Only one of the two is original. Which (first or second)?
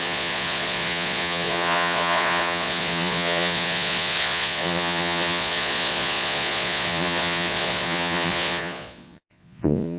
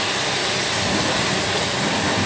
second